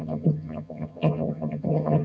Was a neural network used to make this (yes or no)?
yes